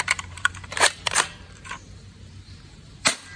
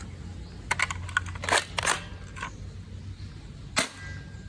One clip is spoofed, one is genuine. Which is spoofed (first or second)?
first